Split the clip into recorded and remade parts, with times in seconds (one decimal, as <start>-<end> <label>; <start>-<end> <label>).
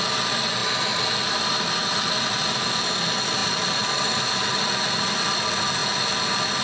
0.0-6.6 recorded